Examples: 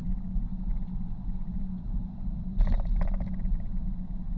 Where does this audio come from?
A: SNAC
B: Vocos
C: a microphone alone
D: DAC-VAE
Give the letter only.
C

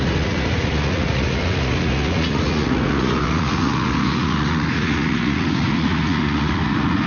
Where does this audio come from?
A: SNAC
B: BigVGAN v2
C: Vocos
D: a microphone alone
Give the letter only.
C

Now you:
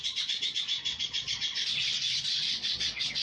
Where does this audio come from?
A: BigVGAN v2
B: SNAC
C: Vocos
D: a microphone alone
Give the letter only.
C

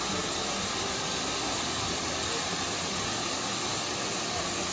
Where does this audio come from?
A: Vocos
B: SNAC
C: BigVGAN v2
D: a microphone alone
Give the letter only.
D